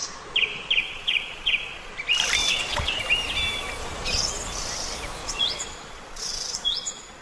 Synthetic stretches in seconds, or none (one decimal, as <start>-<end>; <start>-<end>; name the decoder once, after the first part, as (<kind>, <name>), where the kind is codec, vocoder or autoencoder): 0.8-1.9 (vocoder, Vocos); 2.4-3.0; 3.8-4.3; 5.2-7.2